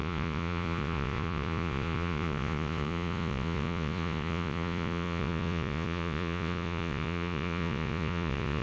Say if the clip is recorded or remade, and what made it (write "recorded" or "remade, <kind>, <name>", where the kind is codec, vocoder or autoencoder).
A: remade, vocoder, Vocos